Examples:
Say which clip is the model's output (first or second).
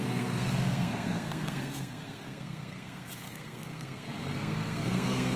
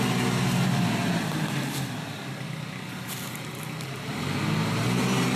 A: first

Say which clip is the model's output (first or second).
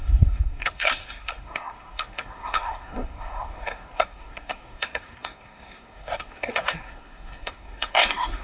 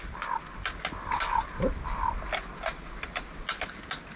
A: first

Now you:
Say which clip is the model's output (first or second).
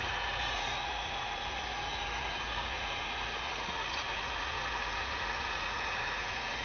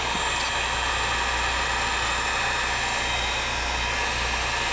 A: first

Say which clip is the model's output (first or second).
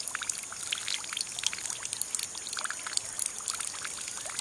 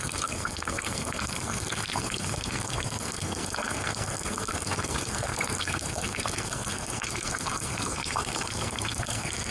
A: second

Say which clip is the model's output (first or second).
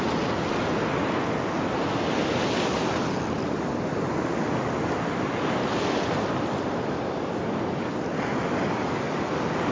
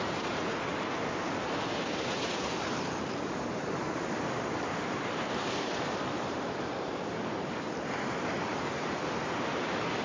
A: second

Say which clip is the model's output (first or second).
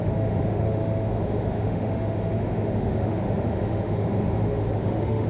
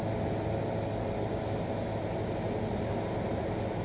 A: first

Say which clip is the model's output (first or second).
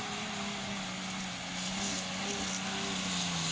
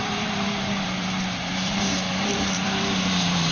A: second